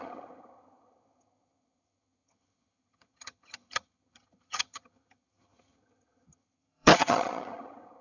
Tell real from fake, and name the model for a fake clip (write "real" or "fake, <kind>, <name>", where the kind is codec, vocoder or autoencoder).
fake, vocoder, HiFi-GAN